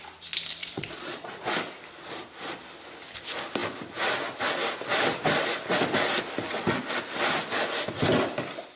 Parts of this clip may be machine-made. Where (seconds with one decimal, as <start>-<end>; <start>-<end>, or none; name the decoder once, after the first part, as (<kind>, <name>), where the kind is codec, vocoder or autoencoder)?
0.6-1.4 (vocoder, Vocos)

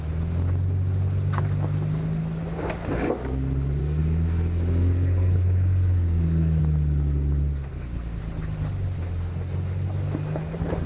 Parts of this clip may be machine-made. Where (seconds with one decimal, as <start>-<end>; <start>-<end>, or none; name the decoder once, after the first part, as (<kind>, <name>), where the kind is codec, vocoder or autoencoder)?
3.8-6.6 (codec, SNAC); 7.7-8.2

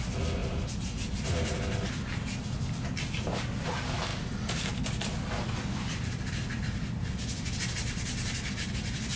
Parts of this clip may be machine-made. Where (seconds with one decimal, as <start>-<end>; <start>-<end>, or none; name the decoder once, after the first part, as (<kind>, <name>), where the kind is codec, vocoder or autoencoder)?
none

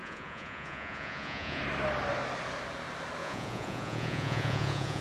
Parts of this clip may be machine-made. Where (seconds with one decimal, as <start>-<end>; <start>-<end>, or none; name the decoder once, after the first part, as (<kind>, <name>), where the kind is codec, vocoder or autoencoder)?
0.0-1.6 (vocoder, Vocos); 3.2-5.0

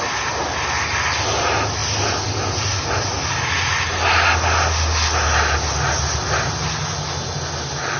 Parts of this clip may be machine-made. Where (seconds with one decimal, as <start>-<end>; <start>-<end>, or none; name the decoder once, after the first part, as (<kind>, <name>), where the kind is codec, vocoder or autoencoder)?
none

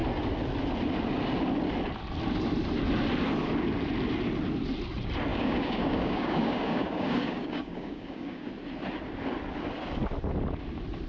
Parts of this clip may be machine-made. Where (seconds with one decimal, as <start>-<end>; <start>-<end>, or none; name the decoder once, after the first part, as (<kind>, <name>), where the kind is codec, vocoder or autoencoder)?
5.3-8.5 (codec, DAC)

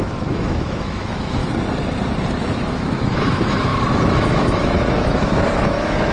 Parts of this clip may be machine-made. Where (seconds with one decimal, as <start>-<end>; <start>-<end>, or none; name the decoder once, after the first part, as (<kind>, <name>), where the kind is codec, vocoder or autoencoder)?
0.0-1.4 (autoencoder, DAC-VAE); 2.4-6.1

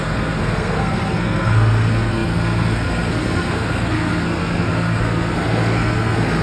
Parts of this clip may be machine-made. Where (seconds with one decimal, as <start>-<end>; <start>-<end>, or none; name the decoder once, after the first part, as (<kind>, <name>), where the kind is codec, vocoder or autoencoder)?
0.0-6.4 (codec, SNAC)